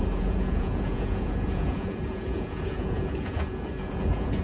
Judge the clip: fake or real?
fake